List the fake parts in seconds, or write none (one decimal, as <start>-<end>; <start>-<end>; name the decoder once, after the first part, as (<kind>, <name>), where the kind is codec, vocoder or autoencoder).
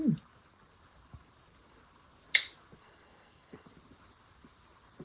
2.8-3.7 (codec, SNAC)